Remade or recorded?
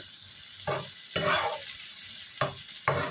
recorded